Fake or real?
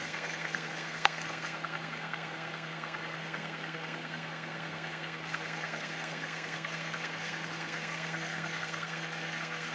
fake